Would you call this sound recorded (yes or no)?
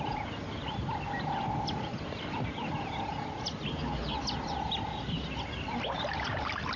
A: yes